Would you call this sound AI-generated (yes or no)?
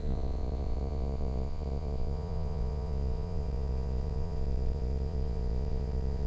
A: yes